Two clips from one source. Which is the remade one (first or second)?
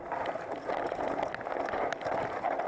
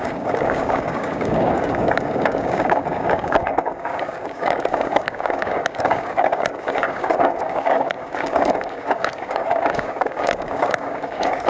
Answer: second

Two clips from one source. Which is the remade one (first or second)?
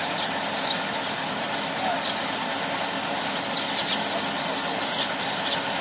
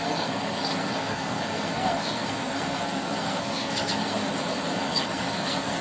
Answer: second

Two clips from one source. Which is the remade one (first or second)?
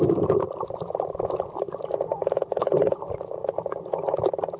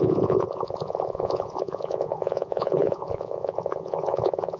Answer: second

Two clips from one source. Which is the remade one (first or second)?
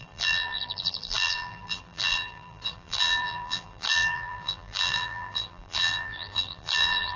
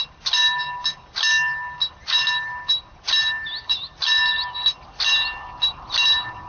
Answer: first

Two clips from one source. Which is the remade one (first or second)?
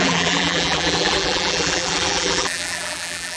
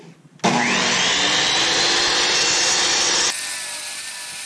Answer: first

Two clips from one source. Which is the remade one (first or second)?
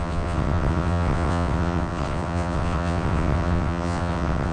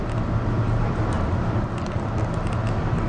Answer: first